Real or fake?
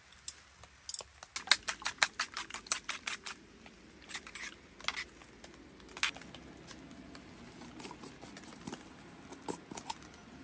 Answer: real